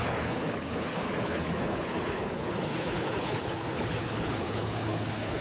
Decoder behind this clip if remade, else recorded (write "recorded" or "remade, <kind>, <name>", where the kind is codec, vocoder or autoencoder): remade, codec, HILCodec